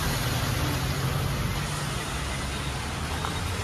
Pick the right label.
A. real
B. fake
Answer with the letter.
A